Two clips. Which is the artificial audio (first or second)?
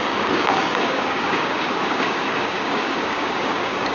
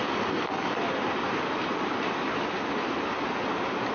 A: first